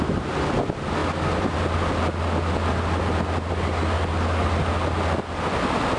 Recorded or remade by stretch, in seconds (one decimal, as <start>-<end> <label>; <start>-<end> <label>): 0.0-6.0 recorded